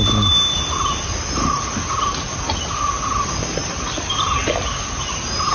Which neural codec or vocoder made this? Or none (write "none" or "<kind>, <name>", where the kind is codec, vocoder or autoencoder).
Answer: none